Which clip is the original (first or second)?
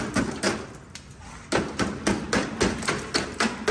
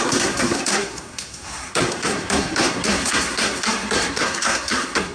first